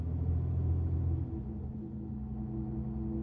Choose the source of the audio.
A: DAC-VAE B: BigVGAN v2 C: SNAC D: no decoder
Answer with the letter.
D